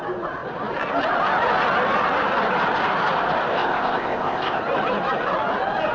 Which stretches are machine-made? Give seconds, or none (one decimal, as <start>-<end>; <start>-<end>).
3.5-4.6